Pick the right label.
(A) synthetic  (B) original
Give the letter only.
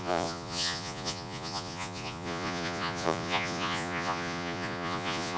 A